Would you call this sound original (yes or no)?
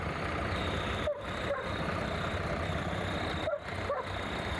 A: yes